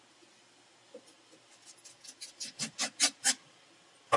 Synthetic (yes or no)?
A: no